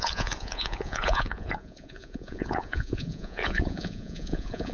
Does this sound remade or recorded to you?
remade